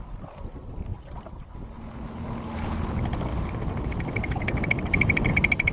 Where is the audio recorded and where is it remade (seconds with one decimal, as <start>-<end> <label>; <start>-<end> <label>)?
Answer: 0.0-5.7 recorded

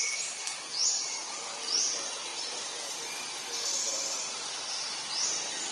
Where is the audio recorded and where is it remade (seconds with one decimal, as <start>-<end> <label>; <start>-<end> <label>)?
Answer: 0.0-5.7 recorded

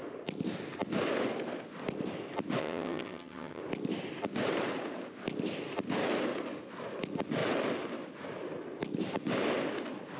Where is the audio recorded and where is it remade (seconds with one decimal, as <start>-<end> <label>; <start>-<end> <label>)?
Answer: 0.0-2.6 recorded; 2.6-3.6 remade; 3.6-10.2 recorded

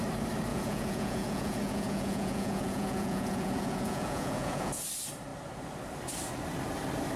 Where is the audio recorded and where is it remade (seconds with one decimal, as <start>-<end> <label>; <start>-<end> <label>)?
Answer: 0.0-0.5 recorded; 0.5-4.8 remade; 4.8-7.2 recorded

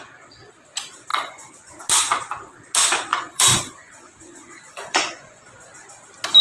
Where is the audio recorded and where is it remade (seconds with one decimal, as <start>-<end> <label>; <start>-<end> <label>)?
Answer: 0.0-1.1 recorded; 1.1-1.8 remade; 1.8-3.1 recorded; 3.1-5.4 remade; 5.4-6.4 recorded